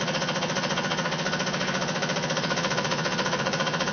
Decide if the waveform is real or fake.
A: fake